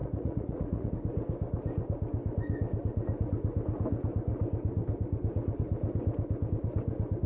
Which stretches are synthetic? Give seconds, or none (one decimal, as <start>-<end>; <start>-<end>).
0.0-0.9